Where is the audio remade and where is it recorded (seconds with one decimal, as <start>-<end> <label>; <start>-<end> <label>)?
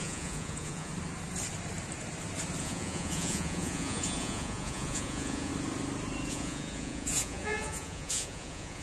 0.0-0.9 remade; 0.9-2.6 recorded; 2.6-5.5 remade; 5.5-6.3 recorded; 6.3-8.8 remade